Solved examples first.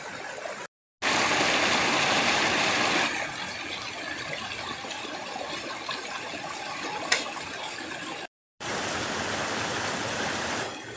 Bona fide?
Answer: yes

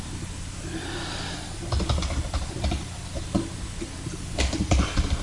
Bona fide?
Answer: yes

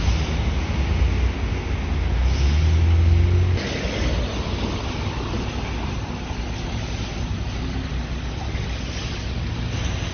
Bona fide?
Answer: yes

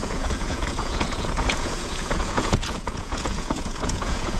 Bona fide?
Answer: no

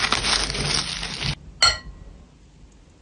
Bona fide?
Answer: yes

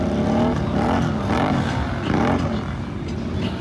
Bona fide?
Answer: yes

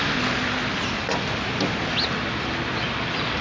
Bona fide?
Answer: yes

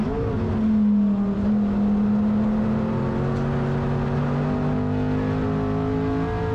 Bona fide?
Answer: yes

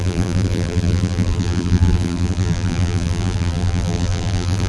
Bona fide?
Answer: no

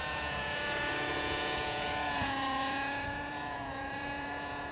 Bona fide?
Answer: no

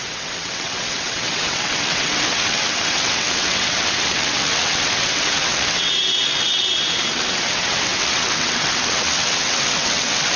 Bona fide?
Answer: no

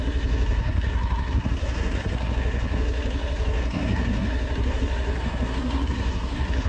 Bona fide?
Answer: no